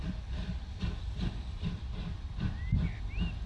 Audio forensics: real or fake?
real